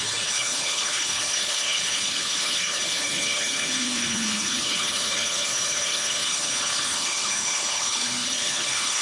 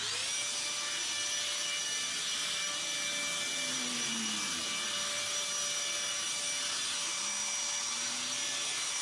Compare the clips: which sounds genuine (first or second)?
second